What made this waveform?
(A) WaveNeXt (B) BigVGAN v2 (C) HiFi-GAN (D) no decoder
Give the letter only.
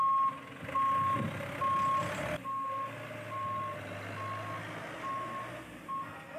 D